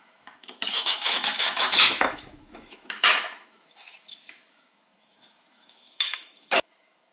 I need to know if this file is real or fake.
fake